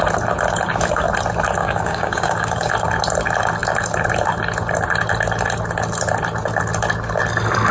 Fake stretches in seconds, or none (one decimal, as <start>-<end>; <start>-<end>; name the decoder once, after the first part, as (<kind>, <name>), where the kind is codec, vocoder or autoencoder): 1.6-2.7 (codec, DAC)